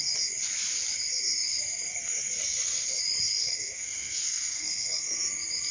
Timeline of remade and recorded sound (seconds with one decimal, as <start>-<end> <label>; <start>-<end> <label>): 0.0-1.9 recorded; 1.9-3.0 remade; 3.0-3.4 recorded; 3.4-5.2 remade; 5.2-5.7 recorded